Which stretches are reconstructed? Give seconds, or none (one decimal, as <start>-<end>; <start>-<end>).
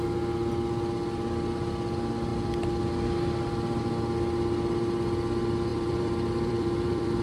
5.7-7.2